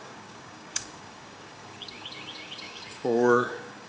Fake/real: fake